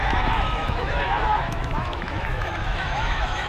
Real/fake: fake